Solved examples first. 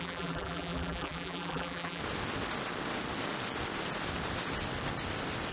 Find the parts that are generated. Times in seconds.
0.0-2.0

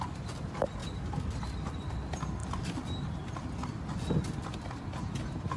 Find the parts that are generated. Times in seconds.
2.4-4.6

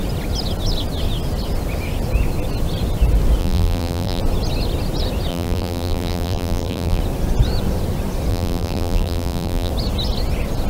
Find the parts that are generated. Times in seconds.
3.4-4.2; 5.3-7.0; 8.3-9.7

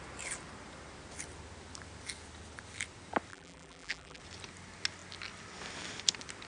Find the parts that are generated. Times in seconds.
3.3-4.2

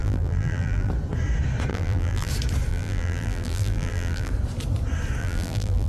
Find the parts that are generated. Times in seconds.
0.0-0.9; 1.7-2.3; 2.7-4.3; 5.2-5.9

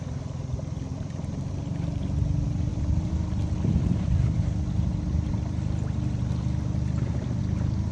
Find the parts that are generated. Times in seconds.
0.9-1.5; 2.7-7.4

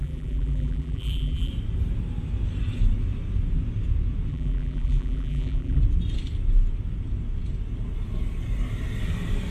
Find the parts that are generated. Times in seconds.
0.0-1.5; 4.3-5.8

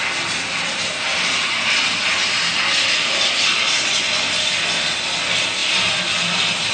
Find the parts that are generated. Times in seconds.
2.2-3.3